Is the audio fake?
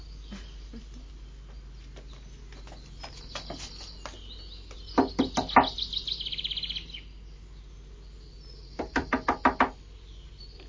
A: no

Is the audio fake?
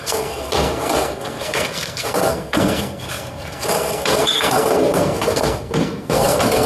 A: yes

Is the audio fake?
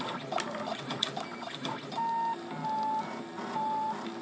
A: no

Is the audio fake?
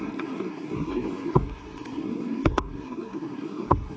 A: yes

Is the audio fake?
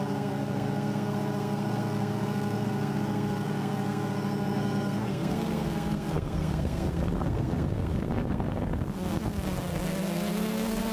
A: yes